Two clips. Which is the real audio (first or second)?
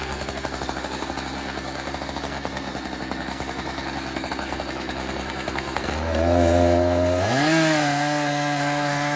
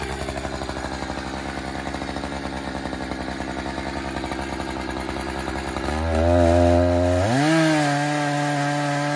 second